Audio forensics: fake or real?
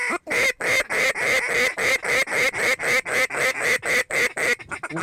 fake